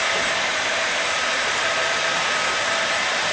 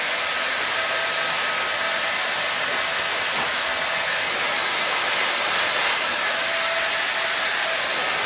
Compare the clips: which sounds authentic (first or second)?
second